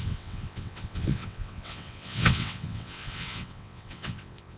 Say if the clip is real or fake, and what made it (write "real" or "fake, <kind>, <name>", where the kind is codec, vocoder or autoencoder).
fake, vocoder, WaveNeXt